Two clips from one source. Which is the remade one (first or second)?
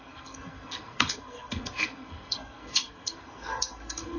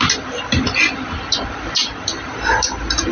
first